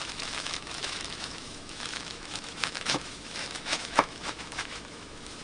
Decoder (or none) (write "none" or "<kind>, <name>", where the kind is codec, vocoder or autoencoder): autoencoder, DAC-VAE